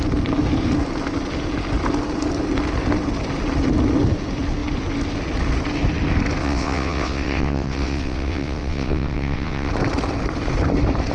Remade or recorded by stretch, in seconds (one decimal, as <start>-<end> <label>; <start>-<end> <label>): 0.0-6.4 recorded; 6.4-9.7 remade; 9.7-11.1 recorded